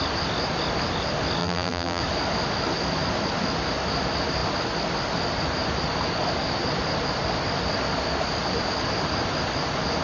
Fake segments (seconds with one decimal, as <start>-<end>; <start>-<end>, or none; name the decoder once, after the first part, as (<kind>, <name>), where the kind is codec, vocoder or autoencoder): 1.4-2.0 (vocoder, BigVGAN v2)